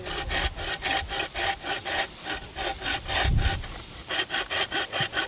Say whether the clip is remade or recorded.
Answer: recorded